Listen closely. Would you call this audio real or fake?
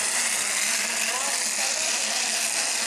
real